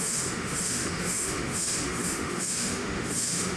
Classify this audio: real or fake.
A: fake